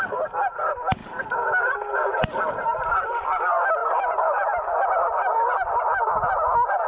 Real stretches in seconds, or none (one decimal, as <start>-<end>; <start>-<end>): 0.0-1.0; 2.2-3.8; 5.8-6.9